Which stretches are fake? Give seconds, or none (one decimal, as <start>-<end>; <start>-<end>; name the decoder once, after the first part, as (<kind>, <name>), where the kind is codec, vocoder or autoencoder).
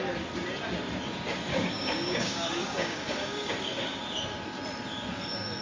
1.5-4.0 (codec, DAC)